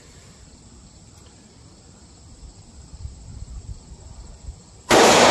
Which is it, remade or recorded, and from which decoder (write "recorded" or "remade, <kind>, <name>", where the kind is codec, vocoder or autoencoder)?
remade, vocoder, BigVGAN v2